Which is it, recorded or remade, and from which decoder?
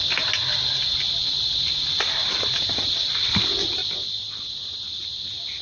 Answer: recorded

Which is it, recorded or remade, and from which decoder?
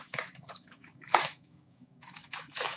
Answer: remade, autoencoder, DAC-VAE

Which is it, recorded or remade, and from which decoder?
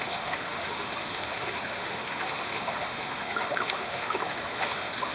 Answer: remade, autoencoder, DAC-VAE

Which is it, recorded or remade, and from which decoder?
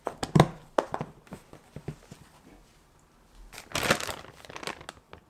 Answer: recorded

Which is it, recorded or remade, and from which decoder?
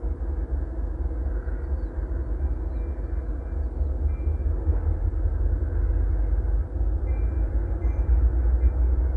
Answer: recorded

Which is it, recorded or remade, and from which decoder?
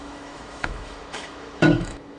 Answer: remade, autoencoder, DAC-VAE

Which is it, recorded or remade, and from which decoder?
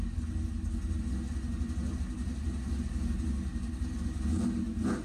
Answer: recorded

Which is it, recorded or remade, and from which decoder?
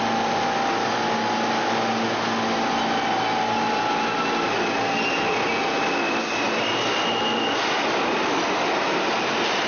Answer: recorded